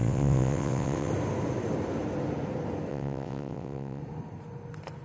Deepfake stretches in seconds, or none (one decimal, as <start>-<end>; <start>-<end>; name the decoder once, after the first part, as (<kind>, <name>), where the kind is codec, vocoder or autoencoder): 0.0-1.1 (vocoder, WaveNeXt); 2.9-4.0